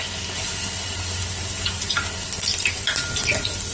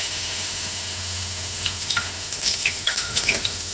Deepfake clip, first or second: second